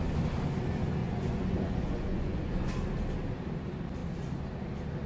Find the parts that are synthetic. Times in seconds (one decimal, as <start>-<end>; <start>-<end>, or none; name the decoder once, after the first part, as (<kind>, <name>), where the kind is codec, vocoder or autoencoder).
1.0-2.7 (vocoder, Vocos)